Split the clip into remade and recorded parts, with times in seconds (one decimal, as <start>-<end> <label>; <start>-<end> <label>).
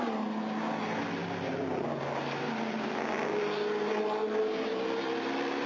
0.0-5.7 recorded